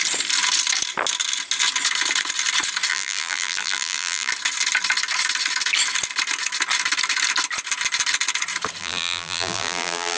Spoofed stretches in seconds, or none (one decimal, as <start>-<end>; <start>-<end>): 2.9-4.3; 8.8-10.2